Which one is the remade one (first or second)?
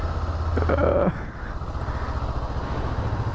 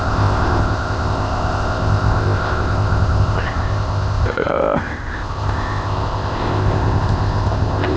second